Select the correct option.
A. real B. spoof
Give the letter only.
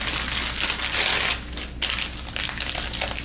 A